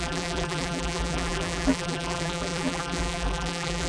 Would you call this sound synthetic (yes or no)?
yes